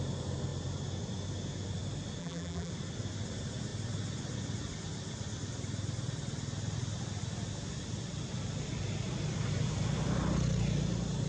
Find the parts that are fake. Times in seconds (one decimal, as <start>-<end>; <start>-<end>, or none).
2.2-2.7